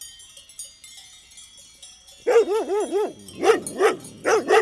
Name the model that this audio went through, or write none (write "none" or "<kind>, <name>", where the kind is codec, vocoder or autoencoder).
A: none